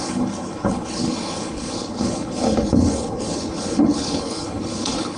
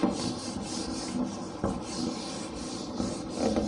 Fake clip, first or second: first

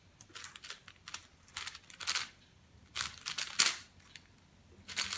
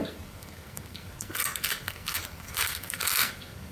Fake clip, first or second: second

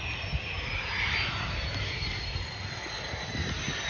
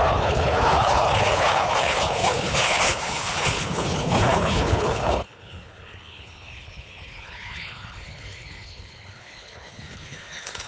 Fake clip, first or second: second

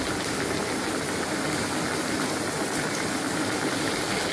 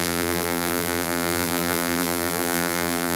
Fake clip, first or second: second